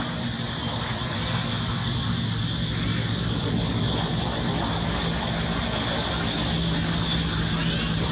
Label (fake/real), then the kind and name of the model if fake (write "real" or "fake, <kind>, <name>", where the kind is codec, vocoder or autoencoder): real